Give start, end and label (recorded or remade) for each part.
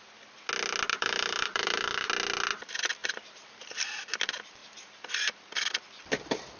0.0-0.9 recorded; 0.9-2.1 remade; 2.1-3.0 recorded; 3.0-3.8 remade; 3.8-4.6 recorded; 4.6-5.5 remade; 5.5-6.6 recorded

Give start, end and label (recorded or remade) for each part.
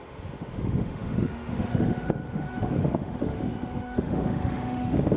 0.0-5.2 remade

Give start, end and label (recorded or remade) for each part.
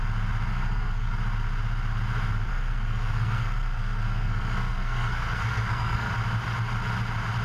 0.0-0.5 recorded; 0.5-1.1 remade; 1.1-2.5 recorded; 2.5-6.1 remade; 6.1-7.4 recorded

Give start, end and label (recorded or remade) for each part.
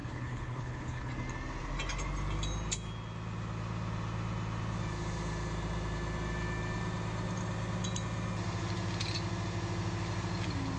0.0-1.1 remade; 1.1-10.8 recorded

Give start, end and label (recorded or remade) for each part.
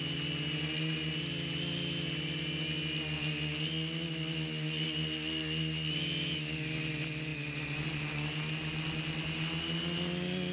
0.0-10.5 recorded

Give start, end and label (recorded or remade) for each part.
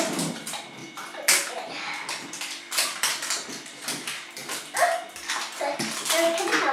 0.0-4.4 remade; 4.4-6.7 recorded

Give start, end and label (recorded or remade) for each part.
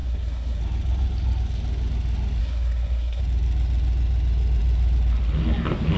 0.0-0.6 remade; 0.6-2.4 recorded; 2.4-3.2 remade; 3.2-6.0 recorded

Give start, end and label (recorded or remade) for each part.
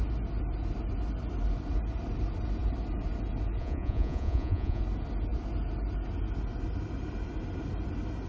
0.0-3.6 recorded; 3.6-4.8 remade; 4.8-8.3 recorded